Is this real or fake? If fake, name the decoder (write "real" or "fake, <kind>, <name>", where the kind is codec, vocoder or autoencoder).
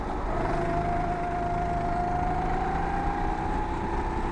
real